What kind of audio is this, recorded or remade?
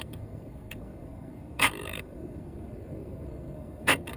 remade